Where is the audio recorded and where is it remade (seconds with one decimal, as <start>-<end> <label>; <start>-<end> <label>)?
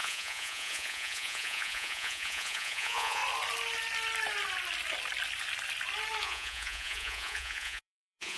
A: 0.0-3.2 remade; 3.2-6.2 recorded; 6.2-8.4 remade